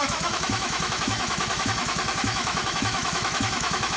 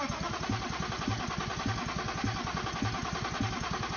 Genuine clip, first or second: second